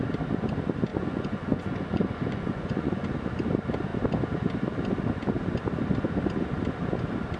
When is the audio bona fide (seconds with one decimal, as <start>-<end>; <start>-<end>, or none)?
0.0-0.9; 3.1-7.4